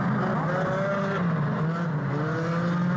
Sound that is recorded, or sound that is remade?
recorded